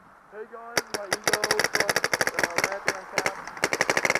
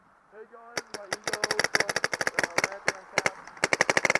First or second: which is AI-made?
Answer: second